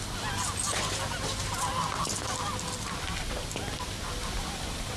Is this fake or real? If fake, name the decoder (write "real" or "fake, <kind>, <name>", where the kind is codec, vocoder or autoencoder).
real